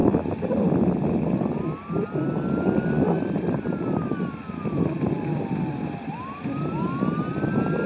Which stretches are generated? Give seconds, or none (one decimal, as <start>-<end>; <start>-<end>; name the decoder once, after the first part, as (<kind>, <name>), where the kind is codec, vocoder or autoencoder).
none